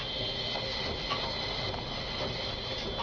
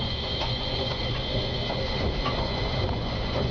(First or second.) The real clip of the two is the first